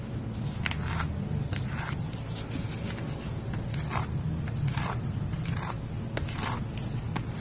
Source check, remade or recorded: recorded